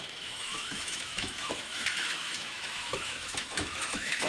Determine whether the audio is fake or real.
fake